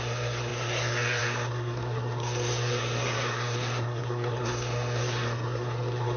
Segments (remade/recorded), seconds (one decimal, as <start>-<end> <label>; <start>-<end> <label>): 0.0-6.2 remade